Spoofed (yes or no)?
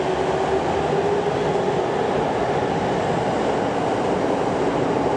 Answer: no